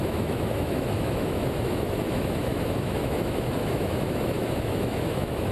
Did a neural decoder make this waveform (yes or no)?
yes